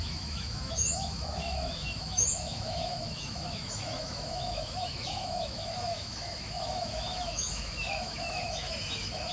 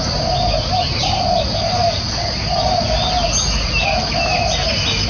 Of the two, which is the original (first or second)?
second